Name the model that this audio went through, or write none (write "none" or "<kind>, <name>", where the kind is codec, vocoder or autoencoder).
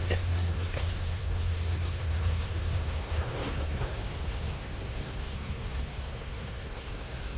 codec, SNAC